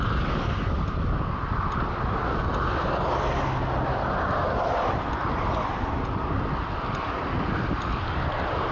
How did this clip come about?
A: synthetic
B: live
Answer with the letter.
B